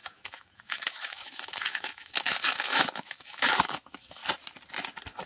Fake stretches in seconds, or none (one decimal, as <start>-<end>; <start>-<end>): 0.0-4.2

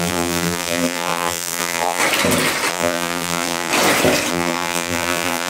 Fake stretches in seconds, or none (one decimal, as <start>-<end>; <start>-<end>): 0.0-2.0; 2.7-3.7; 4.3-5.5

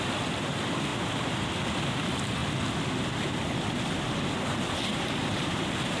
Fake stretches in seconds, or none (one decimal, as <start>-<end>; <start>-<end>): 0.0-0.9; 1.9-2.4; 5.1-6.0

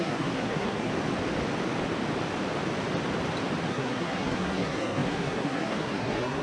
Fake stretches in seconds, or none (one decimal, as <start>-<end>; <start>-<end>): 0.0-0.9; 3.7-6.4